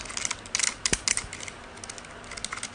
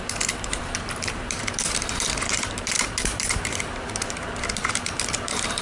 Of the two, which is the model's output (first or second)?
second